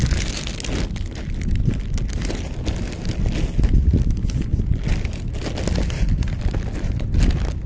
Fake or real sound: real